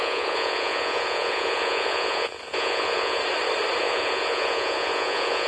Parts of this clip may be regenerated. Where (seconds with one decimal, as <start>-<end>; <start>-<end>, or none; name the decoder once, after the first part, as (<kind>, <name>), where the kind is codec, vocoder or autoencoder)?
0.0-3.2 (vocoder, Vocos); 3.8-5.5